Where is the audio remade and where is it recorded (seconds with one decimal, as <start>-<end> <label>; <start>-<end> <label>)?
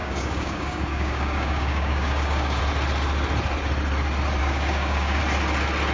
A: 0.0-2.6 remade; 2.6-4.4 recorded; 4.4-5.2 remade; 5.2-5.9 recorded